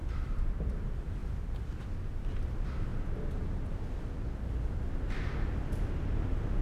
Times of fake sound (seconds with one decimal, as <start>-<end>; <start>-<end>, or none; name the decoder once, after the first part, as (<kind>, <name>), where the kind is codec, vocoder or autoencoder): none